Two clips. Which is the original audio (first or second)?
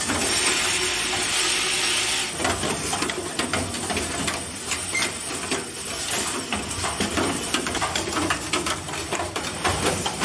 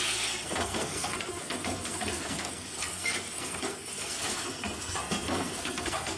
first